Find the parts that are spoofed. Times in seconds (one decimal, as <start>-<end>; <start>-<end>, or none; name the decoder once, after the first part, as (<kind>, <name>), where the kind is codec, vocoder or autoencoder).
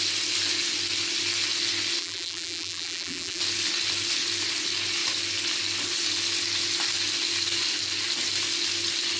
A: 2.0-3.4 (vocoder, BigVGAN v2)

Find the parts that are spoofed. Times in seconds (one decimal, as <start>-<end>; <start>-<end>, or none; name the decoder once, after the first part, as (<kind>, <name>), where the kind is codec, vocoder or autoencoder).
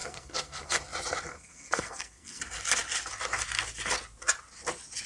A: 0.0-0.8 (codec, SNAC); 1.3-2.4